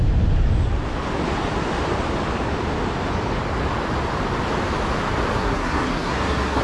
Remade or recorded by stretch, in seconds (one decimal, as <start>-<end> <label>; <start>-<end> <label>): 0.0-5.3 recorded; 5.3-6.6 remade